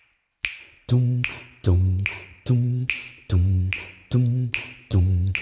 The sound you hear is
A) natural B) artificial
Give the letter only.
A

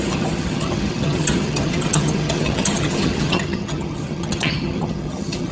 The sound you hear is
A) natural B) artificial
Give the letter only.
B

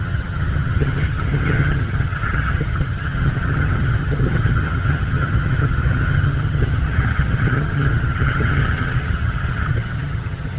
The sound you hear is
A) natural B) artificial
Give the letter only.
B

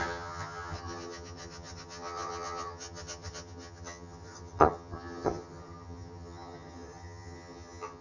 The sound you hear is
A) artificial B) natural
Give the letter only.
A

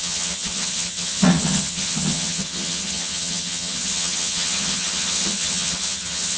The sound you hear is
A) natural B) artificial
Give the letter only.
B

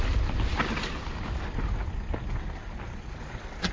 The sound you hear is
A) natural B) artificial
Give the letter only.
A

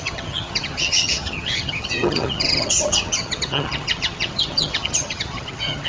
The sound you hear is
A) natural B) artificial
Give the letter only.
B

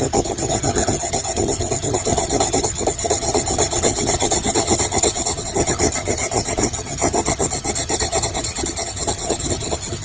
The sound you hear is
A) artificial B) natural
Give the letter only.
A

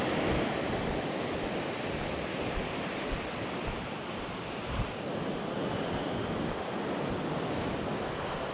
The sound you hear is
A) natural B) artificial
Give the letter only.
A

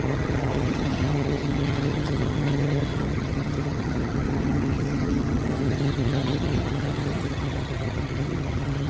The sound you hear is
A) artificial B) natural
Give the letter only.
A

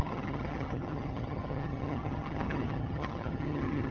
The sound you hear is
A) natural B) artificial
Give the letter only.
B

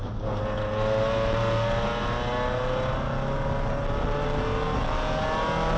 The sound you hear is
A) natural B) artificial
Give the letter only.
A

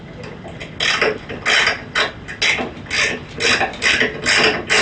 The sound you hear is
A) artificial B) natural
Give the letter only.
B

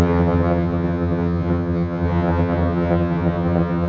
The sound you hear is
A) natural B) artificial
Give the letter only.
B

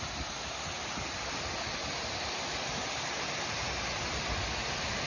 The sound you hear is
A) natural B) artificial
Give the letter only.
A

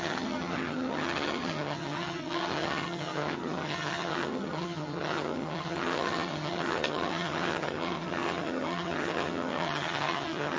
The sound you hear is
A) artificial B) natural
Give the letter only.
A